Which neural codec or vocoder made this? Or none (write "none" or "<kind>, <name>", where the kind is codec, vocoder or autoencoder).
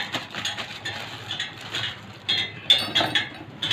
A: none